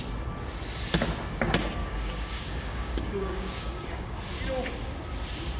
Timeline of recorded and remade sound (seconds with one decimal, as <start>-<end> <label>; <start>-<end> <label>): 0.0-1.8 recorded; 1.8-4.2 remade; 4.2-5.6 recorded